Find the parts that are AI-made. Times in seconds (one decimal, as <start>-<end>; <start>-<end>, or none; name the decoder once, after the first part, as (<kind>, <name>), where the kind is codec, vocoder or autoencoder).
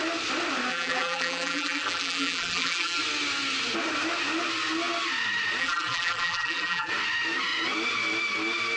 0.7-3.0 (vocoder, BigVGAN v2); 5.6-6.9